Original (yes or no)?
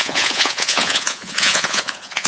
no